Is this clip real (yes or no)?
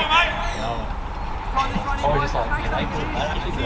yes